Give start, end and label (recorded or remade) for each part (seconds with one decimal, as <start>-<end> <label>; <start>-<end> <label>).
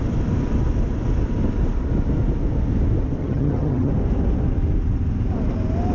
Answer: 0.0-3.2 recorded; 3.2-3.9 remade; 3.9-5.9 recorded